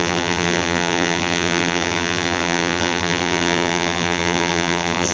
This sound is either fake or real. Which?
fake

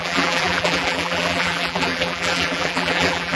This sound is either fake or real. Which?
fake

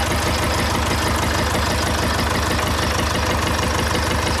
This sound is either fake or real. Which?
real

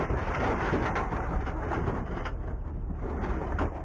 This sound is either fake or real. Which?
fake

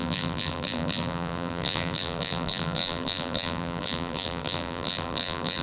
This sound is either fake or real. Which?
fake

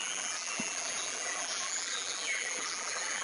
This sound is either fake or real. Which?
fake